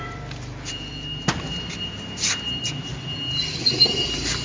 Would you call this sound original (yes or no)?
yes